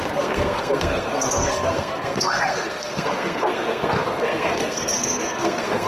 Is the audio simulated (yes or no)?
yes